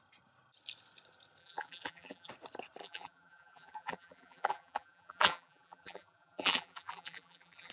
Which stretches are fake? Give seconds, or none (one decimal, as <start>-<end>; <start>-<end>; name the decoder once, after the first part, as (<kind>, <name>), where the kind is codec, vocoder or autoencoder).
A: 1.4-2.3 (vocoder, BigVGAN v2); 2.8-7.7